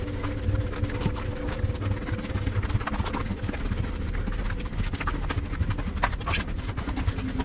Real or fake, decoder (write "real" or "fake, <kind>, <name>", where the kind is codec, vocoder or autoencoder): real